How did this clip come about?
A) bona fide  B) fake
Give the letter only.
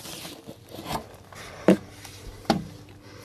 B